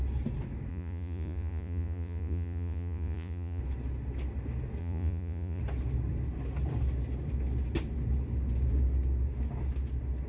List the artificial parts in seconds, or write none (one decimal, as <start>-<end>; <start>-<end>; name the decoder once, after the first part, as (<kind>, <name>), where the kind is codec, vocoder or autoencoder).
0.7-3.6 (vocoder, Vocos); 4.8-5.6